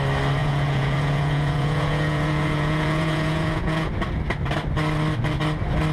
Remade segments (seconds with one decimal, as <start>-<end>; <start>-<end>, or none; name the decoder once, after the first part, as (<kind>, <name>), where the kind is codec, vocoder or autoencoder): 0.4-3.9 (vocoder, Vocos)